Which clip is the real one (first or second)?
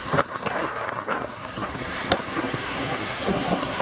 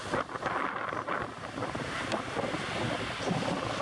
second